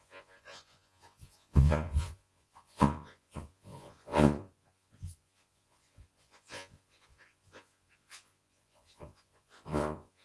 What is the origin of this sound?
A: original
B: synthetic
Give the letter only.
B